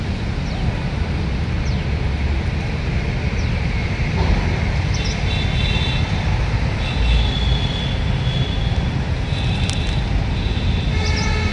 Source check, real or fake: real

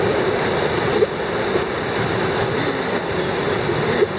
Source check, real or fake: real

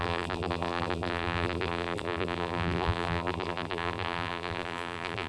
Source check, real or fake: fake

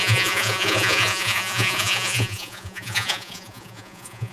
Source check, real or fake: fake